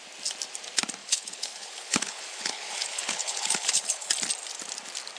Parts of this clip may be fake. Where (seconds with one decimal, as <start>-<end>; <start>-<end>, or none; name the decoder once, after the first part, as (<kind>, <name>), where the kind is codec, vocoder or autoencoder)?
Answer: 1.0-4.1 (codec, HILCodec)